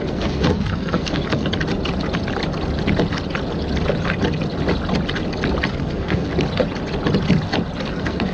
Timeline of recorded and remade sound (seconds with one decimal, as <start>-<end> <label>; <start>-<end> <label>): 0.0-1.5 remade; 1.5-5.7 recorded; 5.7-6.3 remade; 6.3-7.9 recorded; 7.9-8.3 remade